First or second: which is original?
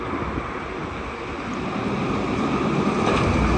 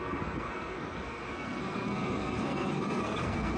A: first